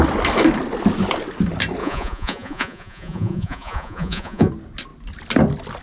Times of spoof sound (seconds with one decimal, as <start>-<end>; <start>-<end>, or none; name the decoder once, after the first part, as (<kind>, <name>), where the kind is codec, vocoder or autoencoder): 1.8-4.5 (vocoder, Vocos)